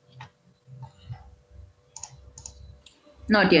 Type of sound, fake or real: real